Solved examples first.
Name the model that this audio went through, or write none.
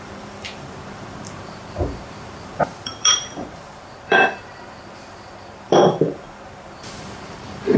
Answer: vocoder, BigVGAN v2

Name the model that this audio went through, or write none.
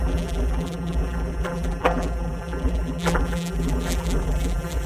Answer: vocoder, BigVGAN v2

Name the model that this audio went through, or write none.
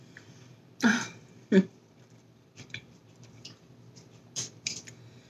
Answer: vocoder, BigVGAN v2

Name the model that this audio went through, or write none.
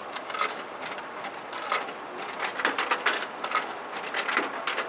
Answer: none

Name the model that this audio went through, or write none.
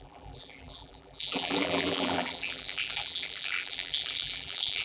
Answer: vocoder, BigVGAN v2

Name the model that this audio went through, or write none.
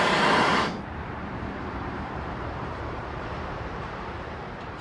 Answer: vocoder, BigVGAN v2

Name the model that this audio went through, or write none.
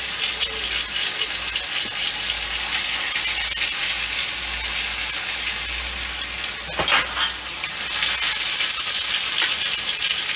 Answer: none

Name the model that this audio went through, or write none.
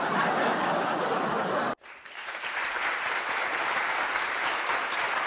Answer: vocoder, BigVGAN v2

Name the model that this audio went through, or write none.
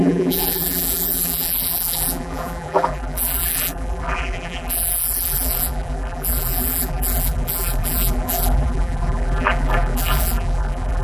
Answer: vocoder, BigVGAN v2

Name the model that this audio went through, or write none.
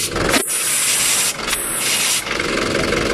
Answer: none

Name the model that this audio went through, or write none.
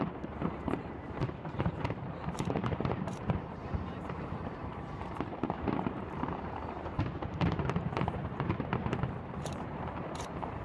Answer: vocoder, BigVGAN v2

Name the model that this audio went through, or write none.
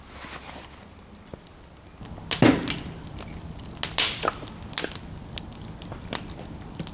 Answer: none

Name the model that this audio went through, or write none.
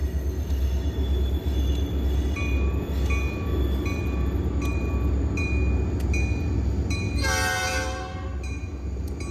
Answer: none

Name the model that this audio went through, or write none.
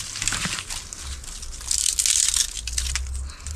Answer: none